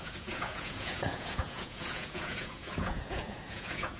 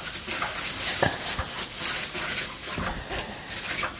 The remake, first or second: first